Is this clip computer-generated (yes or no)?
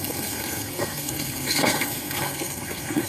yes